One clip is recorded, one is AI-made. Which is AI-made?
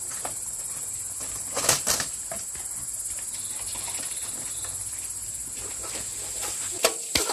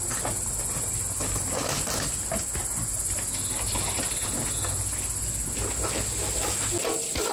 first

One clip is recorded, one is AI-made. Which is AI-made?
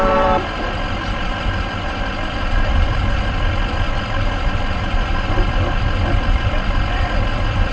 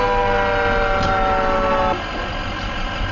first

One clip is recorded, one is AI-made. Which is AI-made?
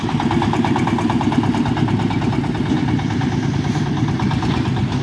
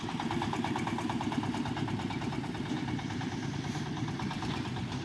second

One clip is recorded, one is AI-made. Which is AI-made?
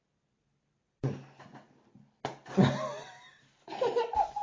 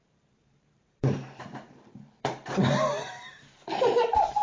second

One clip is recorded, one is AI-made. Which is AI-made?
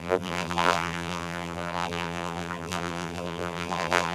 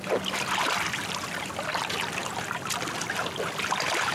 first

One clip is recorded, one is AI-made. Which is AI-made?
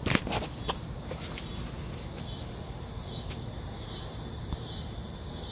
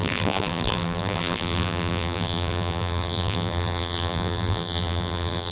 second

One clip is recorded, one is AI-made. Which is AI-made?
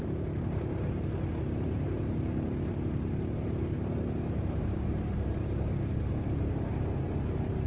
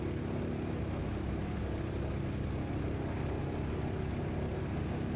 first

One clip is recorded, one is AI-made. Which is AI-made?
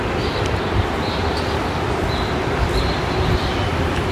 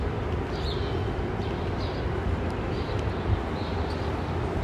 first